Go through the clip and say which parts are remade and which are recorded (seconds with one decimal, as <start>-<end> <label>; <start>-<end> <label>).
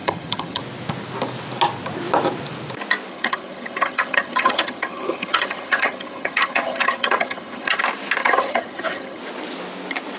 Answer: 0.0-0.6 remade; 0.6-3.1 recorded; 3.1-7.8 remade; 7.8-8.2 recorded; 8.2-9.2 remade; 9.2-10.2 recorded